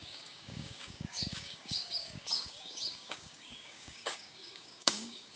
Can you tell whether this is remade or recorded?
remade